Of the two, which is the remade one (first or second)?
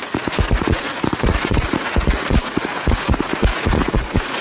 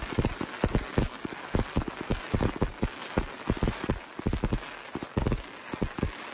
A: first